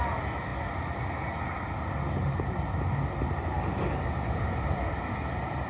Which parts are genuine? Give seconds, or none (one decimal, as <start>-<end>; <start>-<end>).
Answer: 0.0-5.7